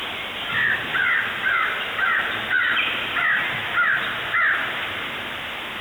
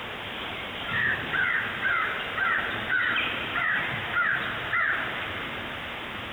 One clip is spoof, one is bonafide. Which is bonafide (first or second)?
first